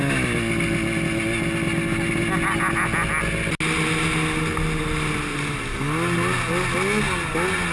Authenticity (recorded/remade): recorded